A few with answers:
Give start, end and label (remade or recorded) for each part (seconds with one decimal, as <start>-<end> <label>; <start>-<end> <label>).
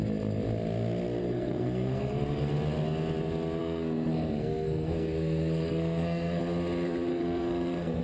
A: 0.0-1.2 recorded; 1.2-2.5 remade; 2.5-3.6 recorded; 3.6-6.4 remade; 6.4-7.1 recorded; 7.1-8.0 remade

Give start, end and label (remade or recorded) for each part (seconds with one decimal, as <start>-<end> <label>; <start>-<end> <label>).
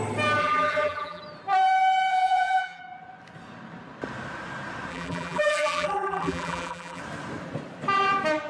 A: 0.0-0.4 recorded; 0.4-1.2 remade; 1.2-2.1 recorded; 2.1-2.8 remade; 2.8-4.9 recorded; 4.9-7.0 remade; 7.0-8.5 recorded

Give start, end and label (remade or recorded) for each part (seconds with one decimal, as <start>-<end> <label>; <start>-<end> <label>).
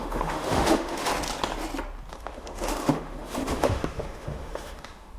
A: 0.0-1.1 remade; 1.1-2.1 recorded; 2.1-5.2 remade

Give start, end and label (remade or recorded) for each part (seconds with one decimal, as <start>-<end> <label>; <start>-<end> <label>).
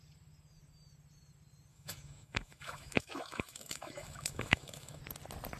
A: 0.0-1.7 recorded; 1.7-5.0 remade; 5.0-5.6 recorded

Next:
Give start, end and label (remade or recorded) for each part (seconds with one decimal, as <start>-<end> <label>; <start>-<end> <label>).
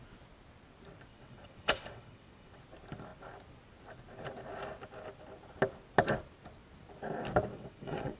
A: 0.0-1.1 recorded; 1.1-2.6 remade; 2.6-7.5 recorded; 7.5-8.2 remade